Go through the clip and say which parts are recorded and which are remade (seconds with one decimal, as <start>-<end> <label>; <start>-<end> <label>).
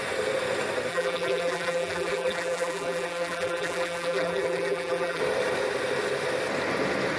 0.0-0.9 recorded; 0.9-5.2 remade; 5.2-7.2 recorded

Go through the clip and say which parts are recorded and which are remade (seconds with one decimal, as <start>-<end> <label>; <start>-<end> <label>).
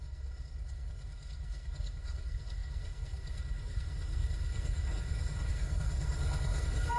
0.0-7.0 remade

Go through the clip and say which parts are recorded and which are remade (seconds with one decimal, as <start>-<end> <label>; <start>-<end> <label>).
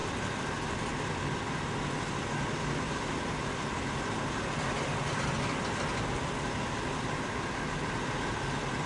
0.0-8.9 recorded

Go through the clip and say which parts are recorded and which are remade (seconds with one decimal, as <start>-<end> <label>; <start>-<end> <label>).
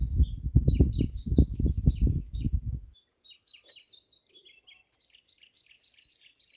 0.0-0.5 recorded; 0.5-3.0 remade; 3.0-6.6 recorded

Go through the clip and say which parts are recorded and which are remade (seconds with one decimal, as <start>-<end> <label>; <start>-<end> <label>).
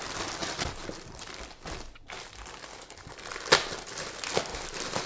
0.0-0.4 recorded; 0.4-3.5 remade; 3.5-4.5 recorded; 4.5-5.1 remade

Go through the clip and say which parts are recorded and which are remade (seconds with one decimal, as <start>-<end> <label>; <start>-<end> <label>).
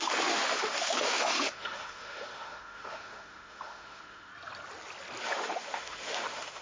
0.0-4.3 remade; 4.3-5.2 recorded; 5.2-6.6 remade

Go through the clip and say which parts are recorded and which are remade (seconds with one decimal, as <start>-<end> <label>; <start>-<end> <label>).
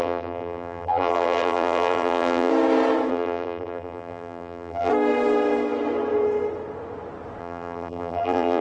0.0-2.5 remade; 2.5-3.1 recorded; 3.1-4.9 remade; 4.9-7.4 recorded; 7.4-8.6 remade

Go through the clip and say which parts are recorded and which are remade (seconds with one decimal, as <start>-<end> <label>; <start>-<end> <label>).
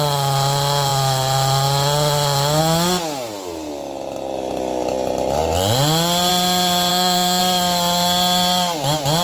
0.0-6.9 recorded; 6.9-7.4 remade; 7.4-9.2 recorded